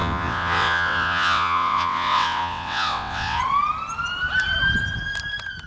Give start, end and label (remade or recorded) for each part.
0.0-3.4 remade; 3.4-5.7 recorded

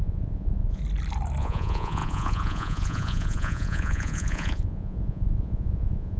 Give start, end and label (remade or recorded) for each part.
0.0-0.8 remade; 0.8-1.4 recorded; 1.4-6.2 remade

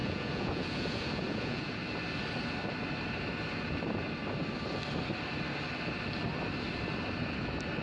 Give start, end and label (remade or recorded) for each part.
0.0-1.8 remade; 1.8-7.8 recorded

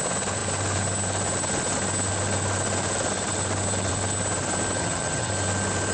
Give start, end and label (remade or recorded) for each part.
0.0-4.8 recorded; 4.8-5.3 remade; 5.3-5.9 recorded

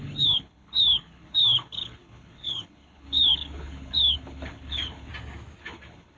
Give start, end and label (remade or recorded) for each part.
0.0-5.1 remade; 5.1-5.6 recorded; 5.6-6.2 remade

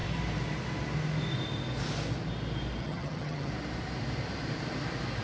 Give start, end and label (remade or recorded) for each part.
0.0-2.8 recorded; 2.8-3.5 remade; 3.5-5.2 recorded

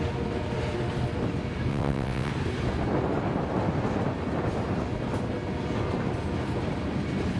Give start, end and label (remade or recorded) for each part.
0.0-1.7 recorded; 1.7-2.3 remade; 2.3-7.4 recorded

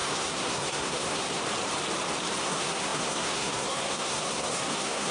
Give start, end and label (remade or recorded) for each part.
0.0-1.4 remade; 1.4-2.4 recorded; 2.4-5.1 remade